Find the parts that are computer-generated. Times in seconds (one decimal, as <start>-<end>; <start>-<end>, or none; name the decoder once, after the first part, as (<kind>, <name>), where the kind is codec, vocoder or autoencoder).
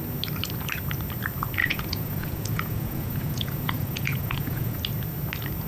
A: 1.6-4.8 (vocoder, Vocos)